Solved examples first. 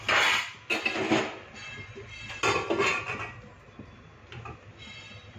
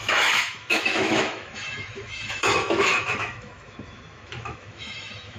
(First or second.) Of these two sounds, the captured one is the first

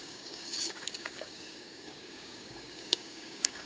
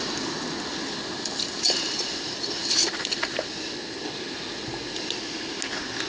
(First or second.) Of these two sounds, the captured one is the second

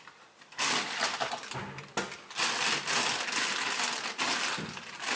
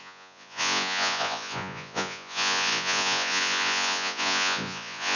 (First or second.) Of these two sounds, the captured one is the first